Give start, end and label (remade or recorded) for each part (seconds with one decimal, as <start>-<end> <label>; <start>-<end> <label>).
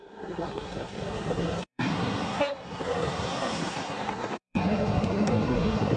0.0-6.0 remade